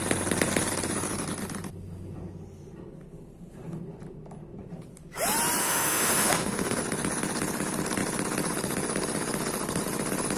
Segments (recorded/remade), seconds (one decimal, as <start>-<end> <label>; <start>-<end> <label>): 0.0-5.6 recorded; 5.6-6.8 remade; 6.8-10.4 recorded